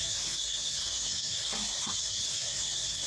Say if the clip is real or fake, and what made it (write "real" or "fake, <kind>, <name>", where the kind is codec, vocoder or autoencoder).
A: fake, codec, SNAC